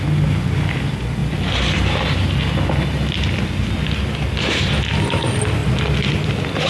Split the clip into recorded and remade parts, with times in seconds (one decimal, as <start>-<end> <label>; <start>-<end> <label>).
0.0-6.7 recorded